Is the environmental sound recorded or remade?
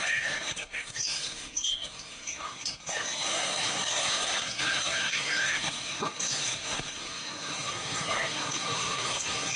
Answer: remade